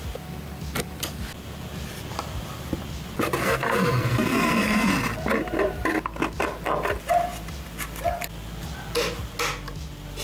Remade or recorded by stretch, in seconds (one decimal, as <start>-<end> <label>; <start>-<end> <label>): 0.0-3.4 recorded; 3.4-4.9 remade; 4.9-10.2 recorded